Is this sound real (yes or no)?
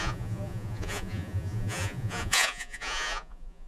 no